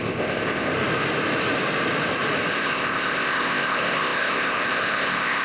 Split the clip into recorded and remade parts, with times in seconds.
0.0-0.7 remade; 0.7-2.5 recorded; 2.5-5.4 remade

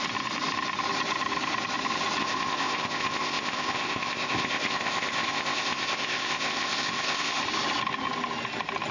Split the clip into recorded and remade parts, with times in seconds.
0.0-2.2 recorded; 2.2-7.4 remade; 7.4-8.9 recorded